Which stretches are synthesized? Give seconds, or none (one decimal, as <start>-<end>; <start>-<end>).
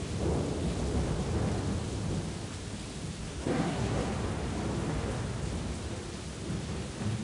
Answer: 3.2-4.1